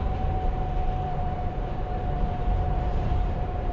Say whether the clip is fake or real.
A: fake